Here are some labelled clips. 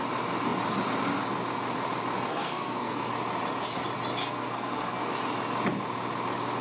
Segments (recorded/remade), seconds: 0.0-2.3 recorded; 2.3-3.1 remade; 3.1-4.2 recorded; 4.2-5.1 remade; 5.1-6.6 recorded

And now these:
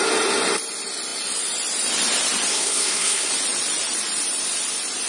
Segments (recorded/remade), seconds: 0.0-2.5 recorded; 2.5-3.3 remade; 3.3-5.1 recorded

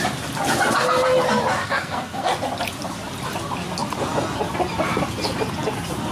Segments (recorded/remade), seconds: 0.0-1.6 recorded; 1.6-2.3 remade; 2.3-6.1 recorded

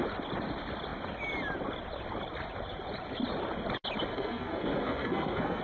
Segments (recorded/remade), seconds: 0.0-4.1 recorded; 4.1-5.6 remade